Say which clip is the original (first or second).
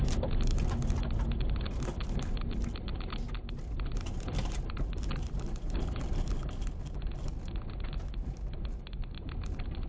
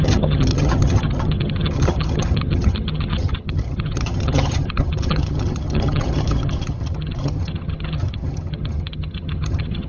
first